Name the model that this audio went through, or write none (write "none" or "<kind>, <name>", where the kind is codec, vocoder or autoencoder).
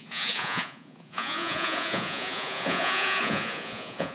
vocoder, Vocos